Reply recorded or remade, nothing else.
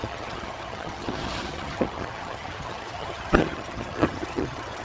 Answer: remade